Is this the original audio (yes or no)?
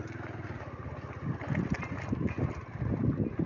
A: yes